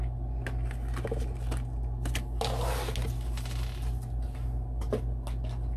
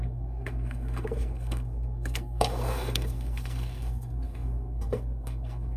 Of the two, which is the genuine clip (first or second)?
first